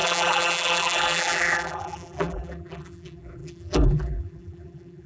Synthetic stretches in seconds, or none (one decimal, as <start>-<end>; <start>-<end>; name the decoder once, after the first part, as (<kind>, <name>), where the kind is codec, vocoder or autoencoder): 0.0-5.1 (vocoder, BigVGAN v2)